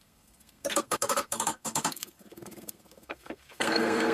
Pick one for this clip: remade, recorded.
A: remade